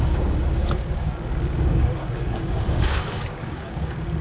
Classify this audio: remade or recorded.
remade